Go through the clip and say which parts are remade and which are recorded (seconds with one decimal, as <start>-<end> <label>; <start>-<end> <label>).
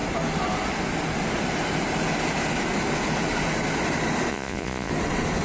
0.0-4.3 recorded; 4.3-4.9 remade; 4.9-5.4 recorded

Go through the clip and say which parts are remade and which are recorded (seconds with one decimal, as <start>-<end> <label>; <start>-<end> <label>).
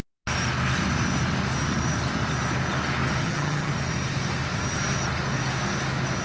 0.0-3.2 recorded; 3.2-3.7 remade; 3.7-6.2 recorded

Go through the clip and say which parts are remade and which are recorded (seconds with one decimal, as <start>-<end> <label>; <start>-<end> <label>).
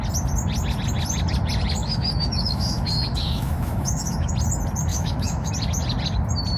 0.0-1.8 recorded; 1.8-4.3 remade; 4.3-4.9 recorded; 4.9-5.5 remade; 5.5-6.6 recorded